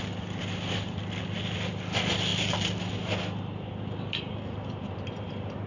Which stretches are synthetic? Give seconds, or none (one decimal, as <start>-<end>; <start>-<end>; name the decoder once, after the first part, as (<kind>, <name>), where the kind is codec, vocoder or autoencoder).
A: none